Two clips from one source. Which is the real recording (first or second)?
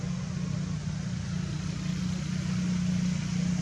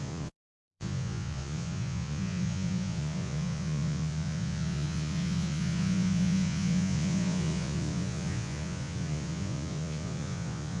first